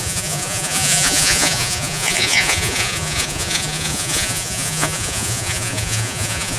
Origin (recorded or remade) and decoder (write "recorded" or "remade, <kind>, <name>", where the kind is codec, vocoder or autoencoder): remade, vocoder, Vocos